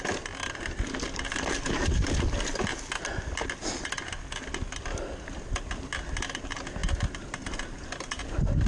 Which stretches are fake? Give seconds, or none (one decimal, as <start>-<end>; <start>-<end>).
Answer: none